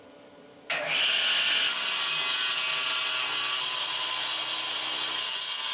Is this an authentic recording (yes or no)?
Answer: yes